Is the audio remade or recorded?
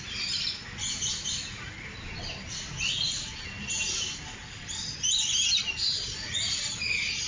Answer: recorded